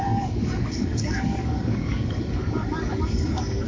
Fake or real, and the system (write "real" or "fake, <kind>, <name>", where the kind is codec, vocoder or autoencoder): fake, codec, DAC